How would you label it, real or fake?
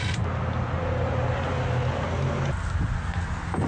real